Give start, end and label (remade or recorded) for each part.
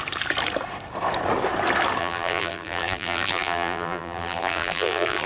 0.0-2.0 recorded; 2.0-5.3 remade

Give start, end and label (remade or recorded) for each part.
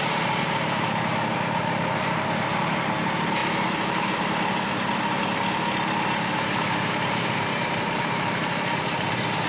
0.0-3.4 remade; 3.4-6.2 recorded; 6.2-9.5 remade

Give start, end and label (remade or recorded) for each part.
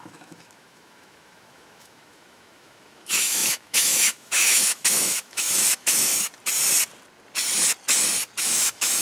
0.0-6.1 remade; 6.1-8.4 recorded; 8.4-9.0 remade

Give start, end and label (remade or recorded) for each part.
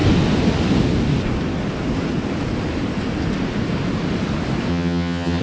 0.0-4.7 recorded; 4.7-5.4 remade